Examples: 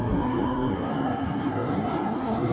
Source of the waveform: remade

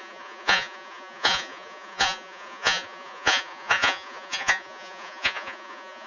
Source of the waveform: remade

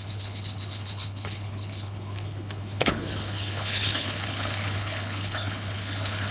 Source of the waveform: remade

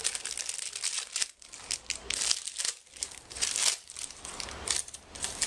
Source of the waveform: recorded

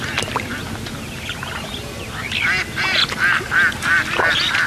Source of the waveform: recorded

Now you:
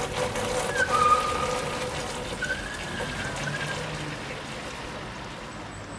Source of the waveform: recorded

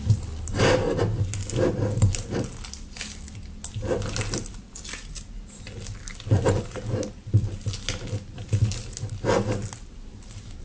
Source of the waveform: recorded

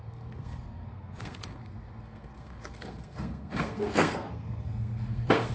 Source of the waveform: remade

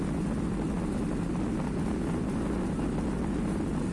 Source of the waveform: recorded